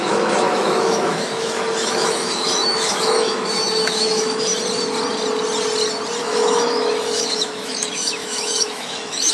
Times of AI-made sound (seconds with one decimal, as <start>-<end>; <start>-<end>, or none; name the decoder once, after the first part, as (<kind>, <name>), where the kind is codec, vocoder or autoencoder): 0.0-4.5 (autoencoder, DAC-VAE); 6.2-9.3